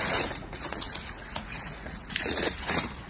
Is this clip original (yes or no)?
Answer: no